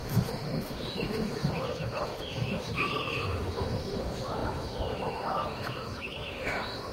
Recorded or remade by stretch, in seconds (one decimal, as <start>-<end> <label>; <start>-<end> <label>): 0.0-6.9 remade